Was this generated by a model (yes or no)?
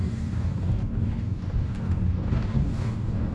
yes